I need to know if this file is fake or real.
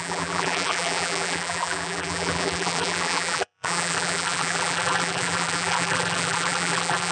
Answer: fake